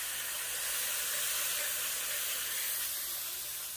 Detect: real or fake real